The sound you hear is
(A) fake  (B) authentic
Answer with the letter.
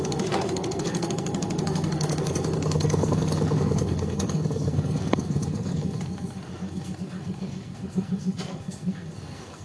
A